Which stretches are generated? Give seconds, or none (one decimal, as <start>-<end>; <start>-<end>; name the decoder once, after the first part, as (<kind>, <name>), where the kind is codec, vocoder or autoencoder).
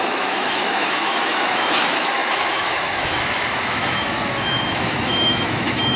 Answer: 0.0-6.0 (autoencoder, DAC-VAE)